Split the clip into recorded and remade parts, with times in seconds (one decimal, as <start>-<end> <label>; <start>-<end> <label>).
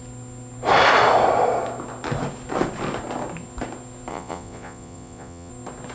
0.0-4.1 recorded; 4.1-5.5 remade; 5.5-5.9 recorded